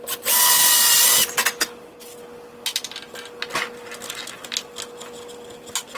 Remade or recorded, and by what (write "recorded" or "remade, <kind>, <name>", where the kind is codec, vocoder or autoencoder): recorded